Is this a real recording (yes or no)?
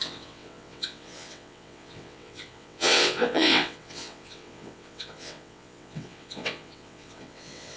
no